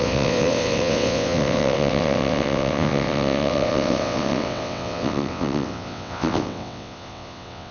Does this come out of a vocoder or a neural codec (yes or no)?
yes